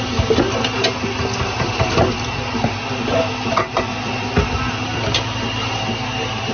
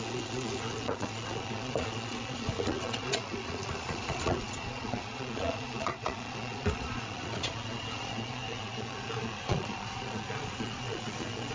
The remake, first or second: second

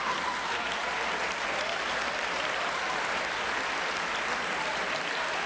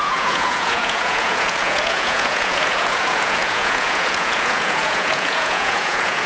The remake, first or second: second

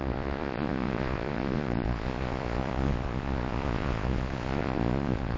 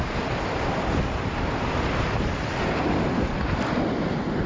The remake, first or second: first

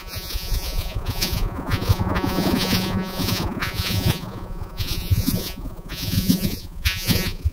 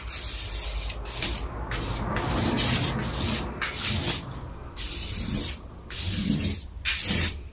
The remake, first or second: first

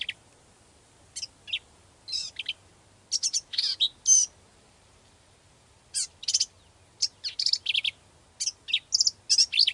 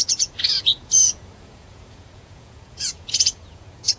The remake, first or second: second